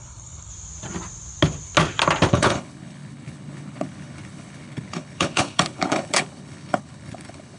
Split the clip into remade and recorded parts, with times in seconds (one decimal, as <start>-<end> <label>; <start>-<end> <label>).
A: 0.0-0.5 remade; 0.5-2.3 recorded; 2.3-7.6 remade